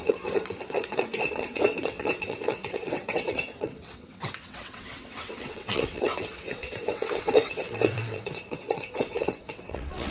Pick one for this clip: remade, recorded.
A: remade